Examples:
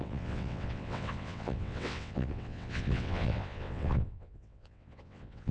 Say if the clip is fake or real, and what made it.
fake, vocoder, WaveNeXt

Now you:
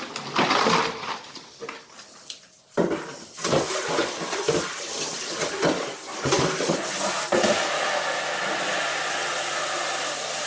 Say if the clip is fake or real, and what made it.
real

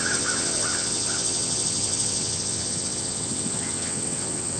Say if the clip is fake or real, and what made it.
fake, vocoder, WaveNeXt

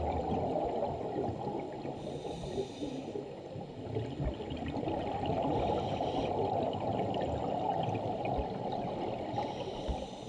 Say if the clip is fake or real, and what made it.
real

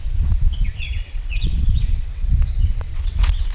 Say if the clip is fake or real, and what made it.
fake, vocoder, WaveNeXt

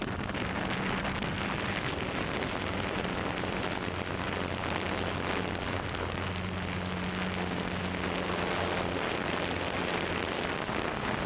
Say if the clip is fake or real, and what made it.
real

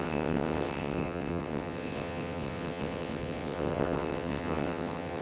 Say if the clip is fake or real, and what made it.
fake, vocoder, WaveNeXt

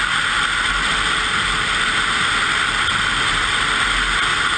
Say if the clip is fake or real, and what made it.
real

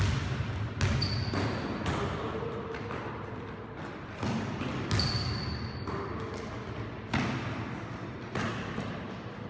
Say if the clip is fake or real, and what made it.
real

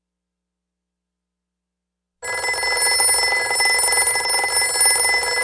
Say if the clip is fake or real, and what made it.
real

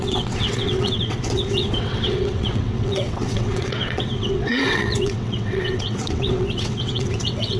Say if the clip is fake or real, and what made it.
fake, vocoder, WaveNeXt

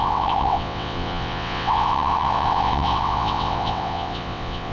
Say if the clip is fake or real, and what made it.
fake, vocoder, WaveNeXt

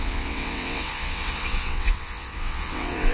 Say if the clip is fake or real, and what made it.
fake, vocoder, WaveNeXt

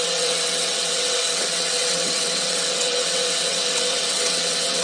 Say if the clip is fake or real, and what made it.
fake, vocoder, WaveNeXt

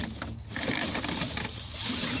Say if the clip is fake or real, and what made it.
real